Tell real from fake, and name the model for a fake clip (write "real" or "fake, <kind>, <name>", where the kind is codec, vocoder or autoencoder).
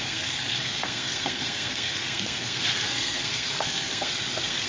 fake, codec, SNAC